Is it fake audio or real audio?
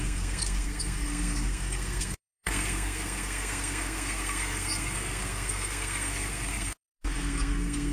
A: fake